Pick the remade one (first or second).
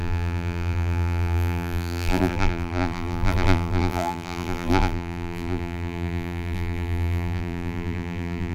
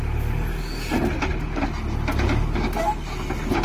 first